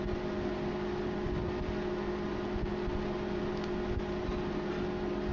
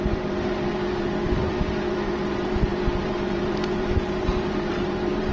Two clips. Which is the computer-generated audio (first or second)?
second